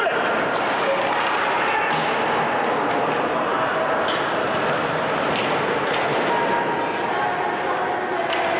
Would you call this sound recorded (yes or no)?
yes